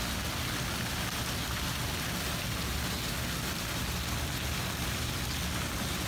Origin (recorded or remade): recorded